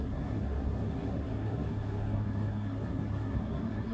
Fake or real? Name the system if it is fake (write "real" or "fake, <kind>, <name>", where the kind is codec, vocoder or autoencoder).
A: fake, codec, SNAC